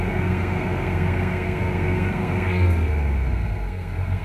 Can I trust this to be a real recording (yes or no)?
no